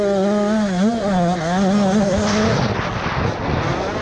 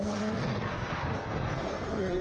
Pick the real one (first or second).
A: first